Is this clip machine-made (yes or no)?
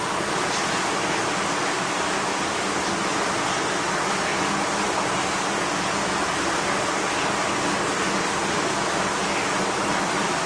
no